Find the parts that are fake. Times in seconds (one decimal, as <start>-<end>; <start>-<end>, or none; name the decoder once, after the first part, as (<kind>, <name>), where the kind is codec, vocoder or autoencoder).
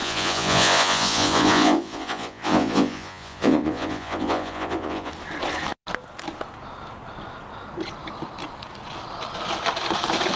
0.0-5.1 (vocoder, Vocos)